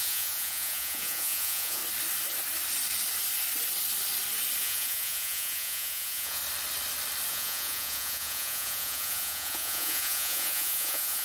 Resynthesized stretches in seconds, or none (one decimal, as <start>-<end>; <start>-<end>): 0.0-1.8; 4.6-6.4; 7.3-11.2